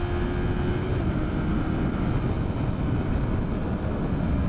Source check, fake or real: real